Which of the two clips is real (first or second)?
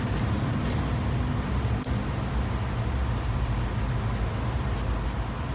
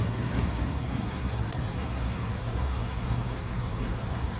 first